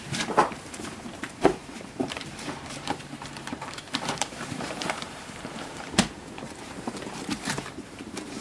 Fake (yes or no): yes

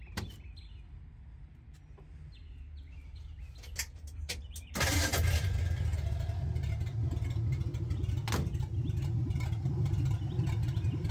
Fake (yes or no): no